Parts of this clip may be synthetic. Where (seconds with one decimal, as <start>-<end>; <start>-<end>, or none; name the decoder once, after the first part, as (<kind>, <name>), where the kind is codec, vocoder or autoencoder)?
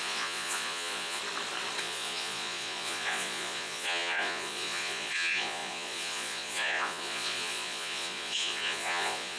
0.0-1.2 (vocoder, Vocos); 1.8-9.4